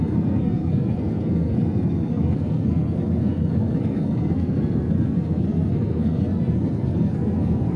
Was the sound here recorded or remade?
remade